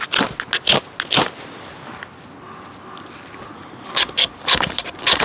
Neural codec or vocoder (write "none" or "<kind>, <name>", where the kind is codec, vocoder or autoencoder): none